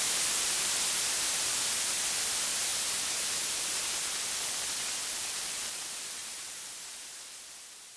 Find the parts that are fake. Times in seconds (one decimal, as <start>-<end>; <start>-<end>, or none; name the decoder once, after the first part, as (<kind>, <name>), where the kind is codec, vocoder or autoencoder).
6.2-7.2 (vocoder, BigVGAN v2)